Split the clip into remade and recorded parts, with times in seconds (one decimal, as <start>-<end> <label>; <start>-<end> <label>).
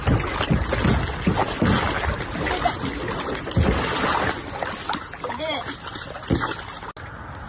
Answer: 0.0-7.5 recorded